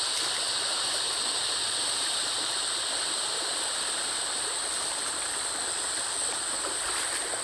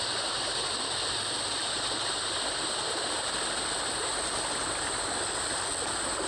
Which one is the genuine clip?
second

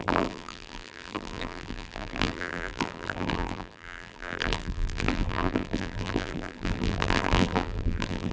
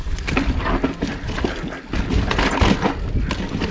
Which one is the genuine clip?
second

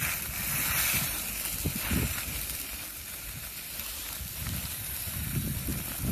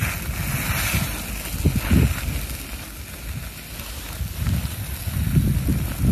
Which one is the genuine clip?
second